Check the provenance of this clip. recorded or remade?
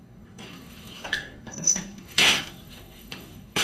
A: remade